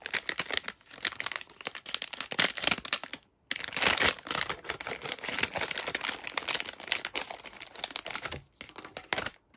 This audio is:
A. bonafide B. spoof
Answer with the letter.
A